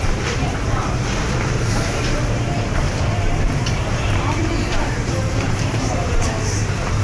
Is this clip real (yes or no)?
no